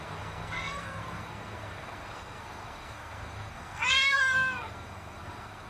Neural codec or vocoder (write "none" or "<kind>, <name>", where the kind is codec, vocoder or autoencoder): codec, SNAC